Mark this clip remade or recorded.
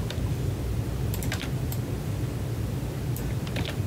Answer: remade